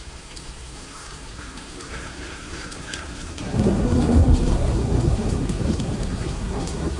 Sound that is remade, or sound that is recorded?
remade